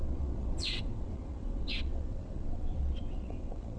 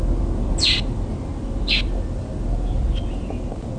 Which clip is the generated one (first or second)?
first